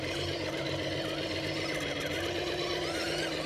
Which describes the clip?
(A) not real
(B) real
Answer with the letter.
B